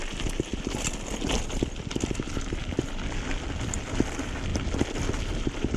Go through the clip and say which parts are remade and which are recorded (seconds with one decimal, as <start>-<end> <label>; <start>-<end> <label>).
0.0-5.8 recorded